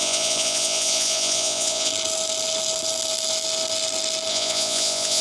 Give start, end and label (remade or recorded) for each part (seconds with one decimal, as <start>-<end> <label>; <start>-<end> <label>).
0.0-1.9 remade; 1.9-4.3 recorded; 4.3-5.2 remade